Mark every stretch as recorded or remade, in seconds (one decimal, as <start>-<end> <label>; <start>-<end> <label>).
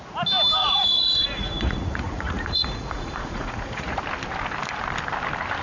0.0-0.6 recorded; 0.6-4.0 remade; 4.0-5.6 recorded